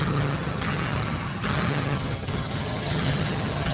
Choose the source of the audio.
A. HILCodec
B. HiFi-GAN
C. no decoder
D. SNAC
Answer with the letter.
B